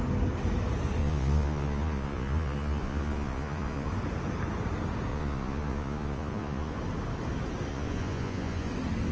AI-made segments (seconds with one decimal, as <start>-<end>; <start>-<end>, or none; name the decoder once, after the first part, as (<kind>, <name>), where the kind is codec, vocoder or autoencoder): 1.0-3.9 (vocoder, Vocos); 5.1-6.8; 7.7-8.7